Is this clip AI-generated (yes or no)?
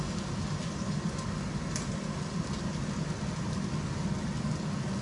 no